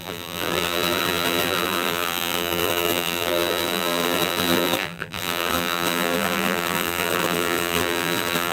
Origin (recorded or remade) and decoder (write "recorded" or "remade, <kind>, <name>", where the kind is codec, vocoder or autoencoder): remade, vocoder, BigVGAN v2